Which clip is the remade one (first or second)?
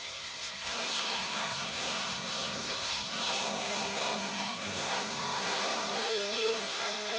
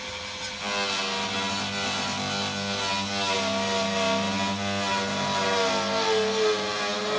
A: first